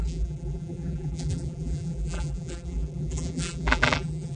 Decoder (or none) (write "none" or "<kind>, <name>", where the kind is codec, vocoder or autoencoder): vocoder, BigVGAN v2